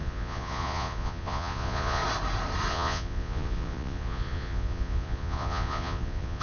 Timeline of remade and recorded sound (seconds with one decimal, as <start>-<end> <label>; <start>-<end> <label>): 0.0-2.0 remade; 2.0-2.7 recorded; 2.7-6.4 remade